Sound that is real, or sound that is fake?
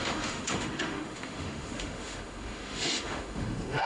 fake